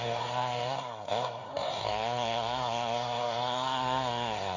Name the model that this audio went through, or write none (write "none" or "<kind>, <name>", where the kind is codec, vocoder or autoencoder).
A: codec, SNAC